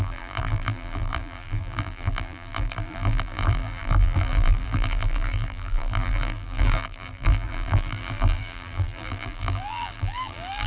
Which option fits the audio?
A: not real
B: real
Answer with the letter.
A